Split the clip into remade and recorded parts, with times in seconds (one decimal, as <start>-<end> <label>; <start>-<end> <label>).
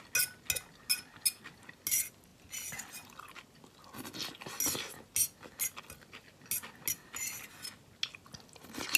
0.0-9.0 recorded